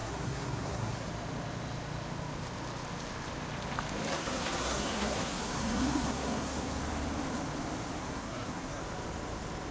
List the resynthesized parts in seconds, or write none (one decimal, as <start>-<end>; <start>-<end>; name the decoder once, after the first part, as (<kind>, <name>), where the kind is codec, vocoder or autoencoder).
0.0-1.1 (codec, SNAC); 4.1-6.8; 8.0-8.8

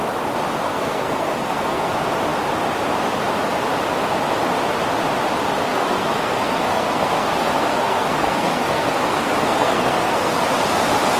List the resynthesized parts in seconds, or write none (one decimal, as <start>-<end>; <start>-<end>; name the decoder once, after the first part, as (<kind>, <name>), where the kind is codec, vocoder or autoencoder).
0.6-1.9 (codec, SNAC); 5.7-10.4